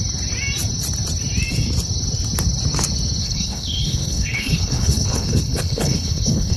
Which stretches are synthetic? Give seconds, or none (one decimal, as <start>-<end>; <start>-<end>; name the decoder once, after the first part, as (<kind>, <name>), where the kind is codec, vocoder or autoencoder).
3.2-6.6 (codec, HILCodec)